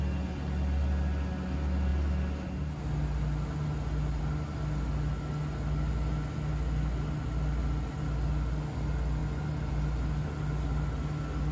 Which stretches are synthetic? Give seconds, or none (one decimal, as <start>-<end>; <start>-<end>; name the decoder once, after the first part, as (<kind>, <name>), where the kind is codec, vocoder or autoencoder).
none

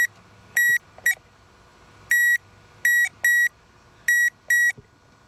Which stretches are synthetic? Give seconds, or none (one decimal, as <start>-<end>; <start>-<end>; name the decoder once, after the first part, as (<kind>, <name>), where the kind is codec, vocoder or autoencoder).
none

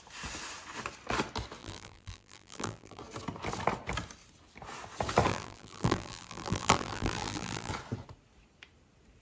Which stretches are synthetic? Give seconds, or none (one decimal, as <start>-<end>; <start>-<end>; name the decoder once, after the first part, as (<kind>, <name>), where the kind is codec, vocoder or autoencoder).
1.6-3.0 (vocoder, BigVGAN v2); 5.3-7.7

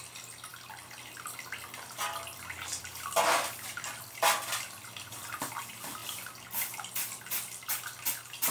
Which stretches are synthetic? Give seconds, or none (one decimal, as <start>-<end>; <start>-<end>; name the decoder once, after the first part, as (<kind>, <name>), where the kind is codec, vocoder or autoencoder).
none

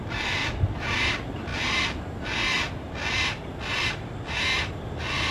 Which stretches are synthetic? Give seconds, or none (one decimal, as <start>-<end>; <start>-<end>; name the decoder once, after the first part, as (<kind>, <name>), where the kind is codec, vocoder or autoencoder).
none